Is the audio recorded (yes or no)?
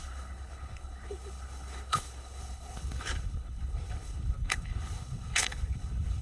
no